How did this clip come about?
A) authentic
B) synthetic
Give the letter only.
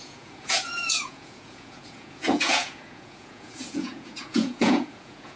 B